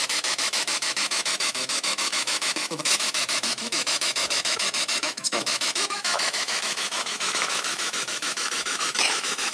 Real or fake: fake